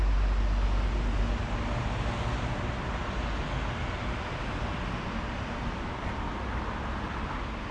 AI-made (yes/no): no